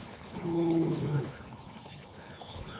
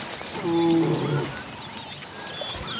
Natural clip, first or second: second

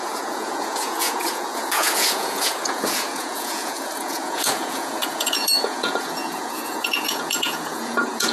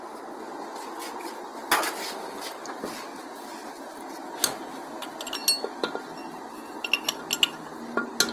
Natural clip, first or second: second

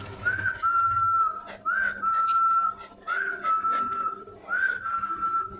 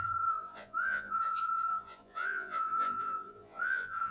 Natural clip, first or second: first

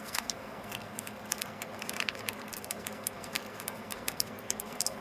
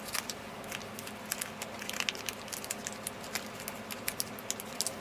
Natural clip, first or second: second